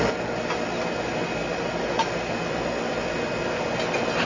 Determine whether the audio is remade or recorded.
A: recorded